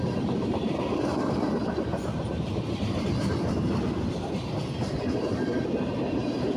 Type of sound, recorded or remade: remade